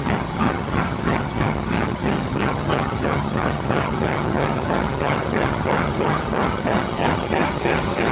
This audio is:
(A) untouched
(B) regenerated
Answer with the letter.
B